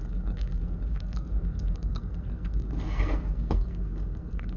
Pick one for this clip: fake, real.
fake